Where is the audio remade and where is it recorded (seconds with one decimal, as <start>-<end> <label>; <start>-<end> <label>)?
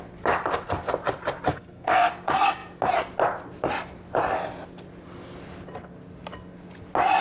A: 0.0-1.5 recorded; 1.5-2.1 remade; 2.1-7.2 recorded